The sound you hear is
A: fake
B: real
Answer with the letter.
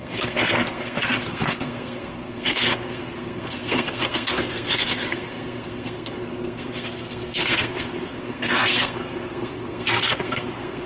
A